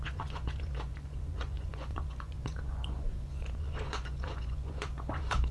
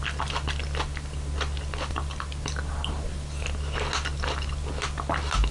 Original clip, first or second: second